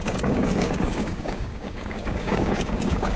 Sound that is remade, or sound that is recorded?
remade